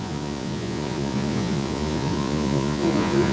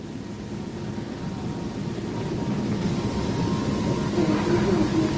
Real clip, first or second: second